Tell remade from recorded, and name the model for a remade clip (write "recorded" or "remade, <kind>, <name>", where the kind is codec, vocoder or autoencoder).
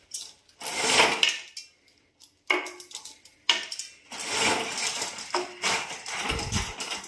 recorded